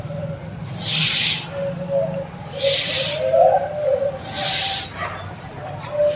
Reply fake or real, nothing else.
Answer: real